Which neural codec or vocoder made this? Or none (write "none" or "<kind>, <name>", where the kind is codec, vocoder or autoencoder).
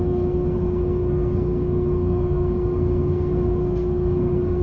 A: codec, SNAC